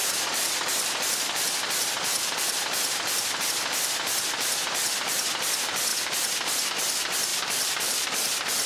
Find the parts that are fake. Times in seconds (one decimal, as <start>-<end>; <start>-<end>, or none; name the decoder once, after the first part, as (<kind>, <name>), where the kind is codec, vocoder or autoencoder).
0.0-3.5 (vocoder, BigVGAN v2); 5.9-6.6; 7.3-7.8